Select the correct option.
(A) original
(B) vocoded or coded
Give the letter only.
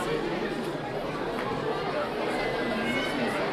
A